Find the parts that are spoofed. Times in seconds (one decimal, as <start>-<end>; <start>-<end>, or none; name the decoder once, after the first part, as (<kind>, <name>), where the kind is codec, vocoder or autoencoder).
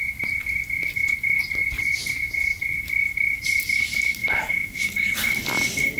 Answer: 4.2-4.8 (autoencoder, DAC-VAE)